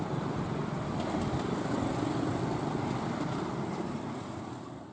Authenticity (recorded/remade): recorded